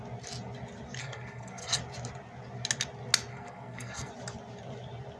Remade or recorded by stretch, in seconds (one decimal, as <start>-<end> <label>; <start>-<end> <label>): 0.0-1.0 recorded; 1.0-1.8 remade; 1.8-3.3 recorded; 3.3-4.1 remade; 4.1-5.2 recorded